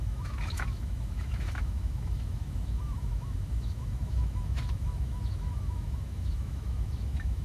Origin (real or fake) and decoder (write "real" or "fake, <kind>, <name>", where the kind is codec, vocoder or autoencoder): fake, autoencoder, DAC-VAE